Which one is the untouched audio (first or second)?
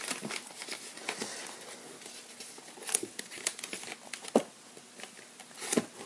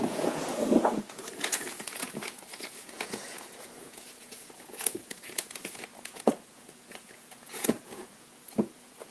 first